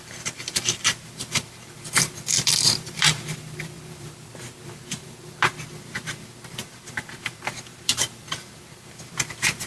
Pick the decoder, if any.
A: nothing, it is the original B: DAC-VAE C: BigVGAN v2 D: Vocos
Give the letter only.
C